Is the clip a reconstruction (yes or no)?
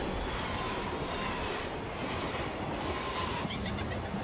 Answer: no